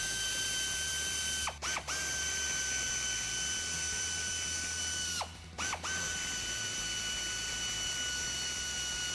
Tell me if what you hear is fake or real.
fake